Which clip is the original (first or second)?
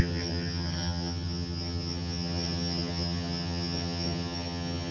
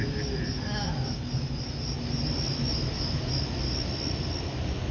second